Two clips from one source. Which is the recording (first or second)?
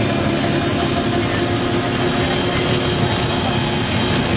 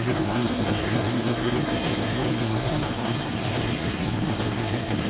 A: first